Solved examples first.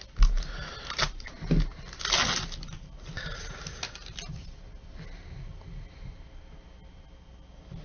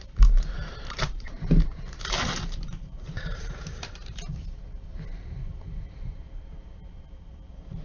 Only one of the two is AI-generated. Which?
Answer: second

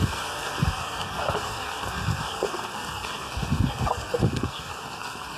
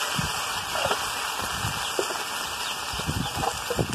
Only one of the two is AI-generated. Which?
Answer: first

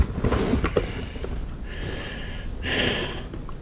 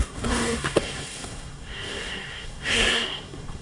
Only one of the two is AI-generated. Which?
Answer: second